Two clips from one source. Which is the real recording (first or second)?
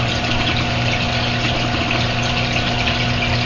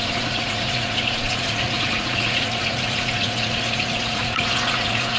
first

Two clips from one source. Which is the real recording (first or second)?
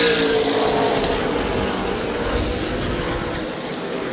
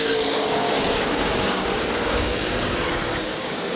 first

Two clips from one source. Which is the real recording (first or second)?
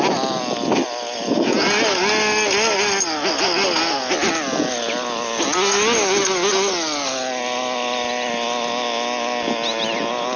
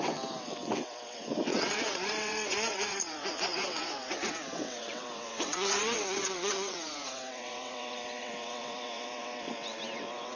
first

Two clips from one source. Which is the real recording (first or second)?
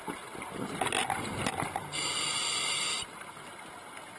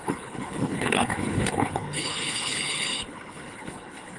first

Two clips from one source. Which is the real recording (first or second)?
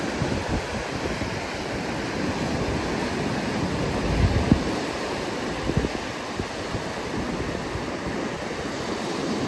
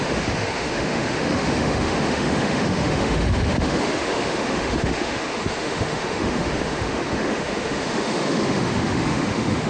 first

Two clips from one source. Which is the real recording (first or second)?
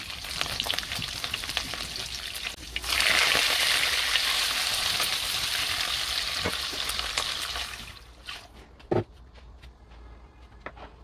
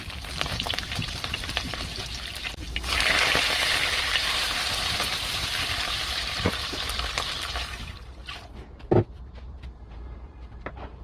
first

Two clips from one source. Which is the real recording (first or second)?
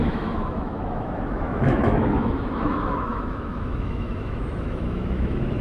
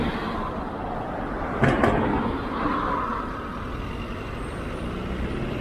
second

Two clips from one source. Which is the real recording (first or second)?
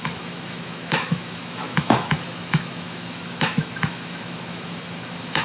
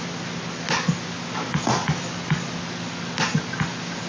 second